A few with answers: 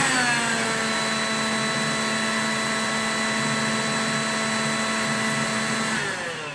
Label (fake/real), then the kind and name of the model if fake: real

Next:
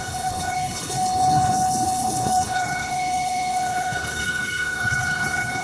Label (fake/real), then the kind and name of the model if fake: fake, codec, HILCodec